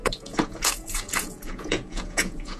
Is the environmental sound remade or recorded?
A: remade